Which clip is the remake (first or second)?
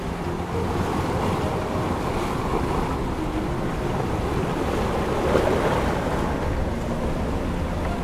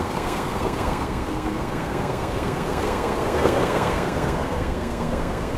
second